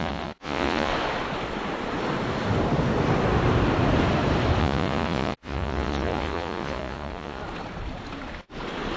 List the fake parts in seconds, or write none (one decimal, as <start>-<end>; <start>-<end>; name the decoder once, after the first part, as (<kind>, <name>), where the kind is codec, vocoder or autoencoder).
0.0-0.9 (vocoder, Vocos); 4.6-7.4